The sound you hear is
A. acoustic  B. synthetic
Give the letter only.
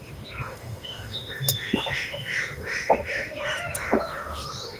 B